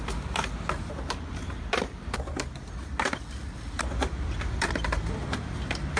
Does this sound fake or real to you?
real